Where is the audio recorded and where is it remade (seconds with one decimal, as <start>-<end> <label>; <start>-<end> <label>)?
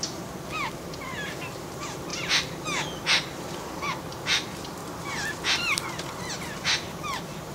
0.0-7.5 recorded